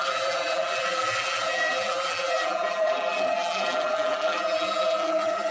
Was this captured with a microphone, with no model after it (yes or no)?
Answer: no